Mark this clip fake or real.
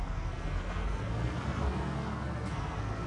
fake